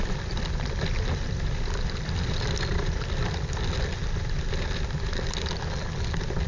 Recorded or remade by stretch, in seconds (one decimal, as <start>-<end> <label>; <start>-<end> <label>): 0.0-6.5 recorded